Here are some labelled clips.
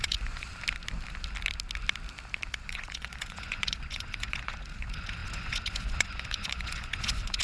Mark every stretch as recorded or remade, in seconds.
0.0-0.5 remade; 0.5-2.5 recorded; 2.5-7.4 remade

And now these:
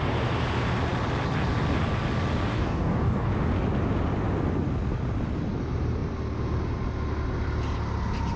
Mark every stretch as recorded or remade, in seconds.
0.0-2.5 recorded; 2.5-3.3 remade; 3.3-8.4 recorded

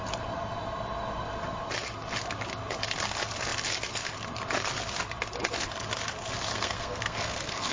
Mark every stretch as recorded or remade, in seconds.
0.0-6.5 recorded; 6.5-7.7 remade